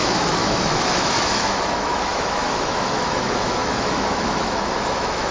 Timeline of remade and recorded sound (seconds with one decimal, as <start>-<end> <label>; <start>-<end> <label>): 0.0-5.3 remade